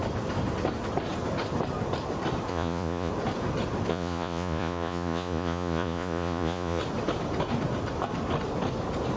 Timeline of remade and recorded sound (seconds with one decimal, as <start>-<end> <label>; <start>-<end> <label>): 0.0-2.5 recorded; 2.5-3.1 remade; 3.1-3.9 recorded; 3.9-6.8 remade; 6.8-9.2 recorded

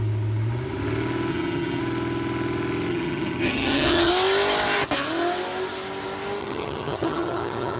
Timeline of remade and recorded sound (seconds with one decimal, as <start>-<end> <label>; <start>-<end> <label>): 0.0-1.3 recorded; 1.3-1.8 remade; 1.8-2.9 recorded; 2.9-4.1 remade; 4.1-6.4 recorded; 6.4-7.8 remade

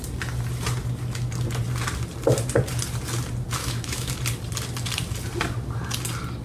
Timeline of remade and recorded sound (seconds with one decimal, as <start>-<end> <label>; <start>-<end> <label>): 0.0-3.6 recorded; 3.6-4.1 remade; 4.1-6.4 recorded